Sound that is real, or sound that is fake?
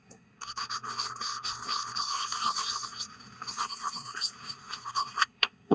fake